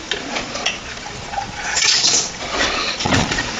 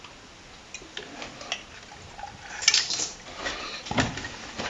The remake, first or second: first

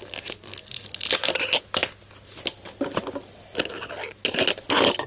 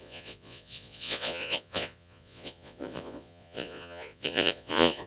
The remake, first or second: second